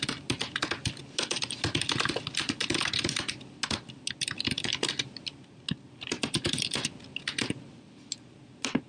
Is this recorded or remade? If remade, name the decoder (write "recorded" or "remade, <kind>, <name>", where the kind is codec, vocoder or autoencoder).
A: recorded